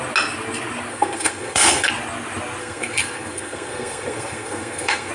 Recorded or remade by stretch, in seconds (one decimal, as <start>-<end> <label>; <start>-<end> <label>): 0.0-0.9 recorded; 0.9-1.9 remade; 1.9-2.6 recorded; 2.6-5.1 remade